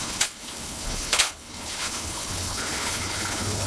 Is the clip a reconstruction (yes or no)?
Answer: yes